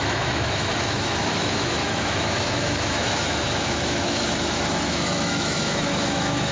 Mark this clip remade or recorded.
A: remade